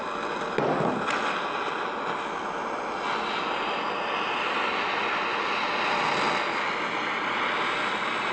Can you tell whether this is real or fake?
real